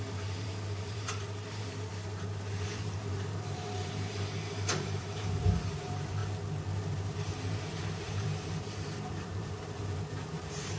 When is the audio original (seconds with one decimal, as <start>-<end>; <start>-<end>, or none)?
6.2-6.9